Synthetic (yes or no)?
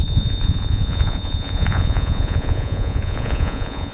yes